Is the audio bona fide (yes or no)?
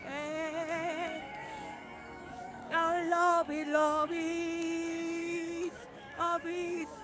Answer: no